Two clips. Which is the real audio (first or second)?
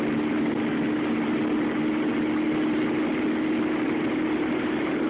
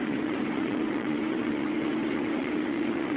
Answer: first